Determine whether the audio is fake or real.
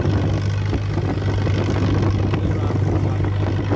real